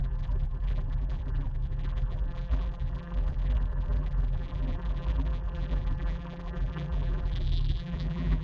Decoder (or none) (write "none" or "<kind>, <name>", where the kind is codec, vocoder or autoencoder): vocoder, BigVGAN v2